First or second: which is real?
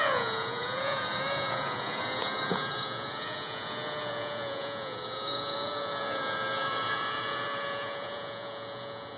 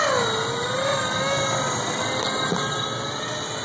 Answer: second